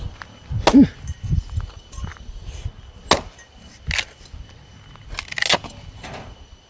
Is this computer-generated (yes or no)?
no